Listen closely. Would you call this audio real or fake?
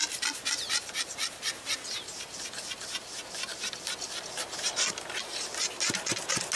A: real